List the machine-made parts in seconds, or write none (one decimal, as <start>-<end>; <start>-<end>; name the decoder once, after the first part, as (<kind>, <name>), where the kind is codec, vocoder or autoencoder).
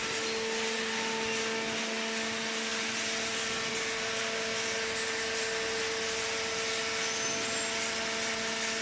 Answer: none